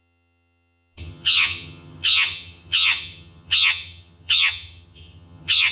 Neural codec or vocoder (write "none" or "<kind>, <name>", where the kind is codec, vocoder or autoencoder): vocoder, HiFi-GAN